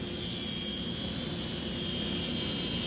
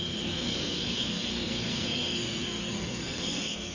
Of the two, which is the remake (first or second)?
second